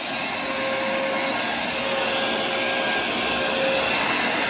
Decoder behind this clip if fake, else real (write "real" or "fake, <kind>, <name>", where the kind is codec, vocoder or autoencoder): real